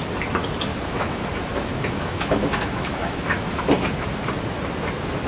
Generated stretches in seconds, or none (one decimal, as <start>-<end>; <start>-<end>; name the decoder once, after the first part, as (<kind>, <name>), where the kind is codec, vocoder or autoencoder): 0.7-3.9 (autoencoder, DAC-VAE)